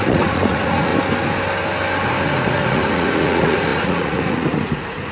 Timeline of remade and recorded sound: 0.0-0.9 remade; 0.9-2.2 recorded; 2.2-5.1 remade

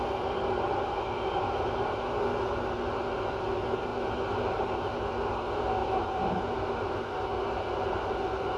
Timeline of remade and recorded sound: 0.0-3.9 recorded; 3.9-4.9 remade; 4.9-5.8 recorded; 5.8-6.4 remade; 6.4-8.6 recorded

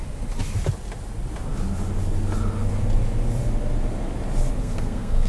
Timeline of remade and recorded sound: 0.0-4.6 recorded; 4.6-5.3 remade

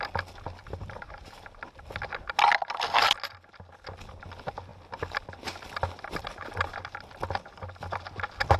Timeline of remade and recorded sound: 0.0-0.6 recorded; 0.6-1.8 remade; 1.8-8.6 recorded